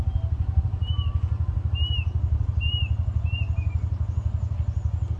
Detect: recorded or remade recorded